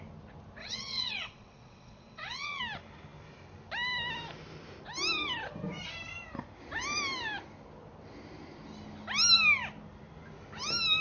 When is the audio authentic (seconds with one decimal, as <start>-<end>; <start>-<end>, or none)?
0.0-0.6; 2.6-11.0